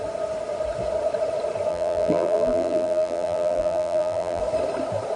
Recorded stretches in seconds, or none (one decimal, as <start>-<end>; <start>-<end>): 0.0-1.7; 4.4-5.2